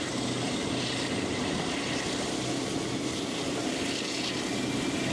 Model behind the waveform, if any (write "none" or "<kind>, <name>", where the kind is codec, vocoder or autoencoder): none